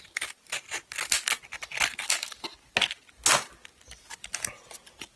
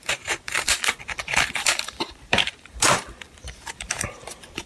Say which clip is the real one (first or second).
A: first